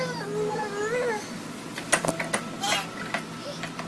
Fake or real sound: real